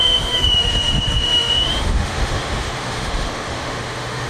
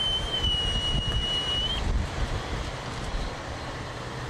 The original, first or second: second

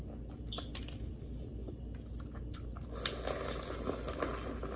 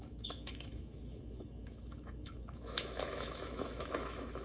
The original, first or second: first